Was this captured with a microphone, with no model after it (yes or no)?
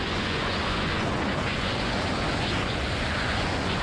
no